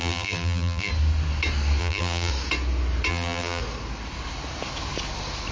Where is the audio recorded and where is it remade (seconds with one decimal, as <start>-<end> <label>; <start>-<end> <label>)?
0.0-0.9 remade; 0.9-1.8 recorded; 1.8-2.3 remade; 2.3-3.1 recorded; 3.1-3.6 remade; 3.6-5.5 recorded